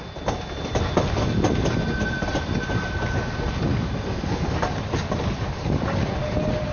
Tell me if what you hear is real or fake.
real